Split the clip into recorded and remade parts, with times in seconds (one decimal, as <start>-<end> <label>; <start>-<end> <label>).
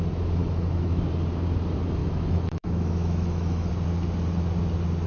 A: 0.0-0.4 recorded; 0.4-1.0 remade; 1.0-2.0 recorded; 2.0-3.7 remade; 3.7-5.1 recorded